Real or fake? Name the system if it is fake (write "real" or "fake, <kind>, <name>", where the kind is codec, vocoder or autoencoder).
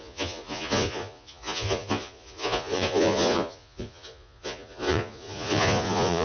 fake, vocoder, Vocos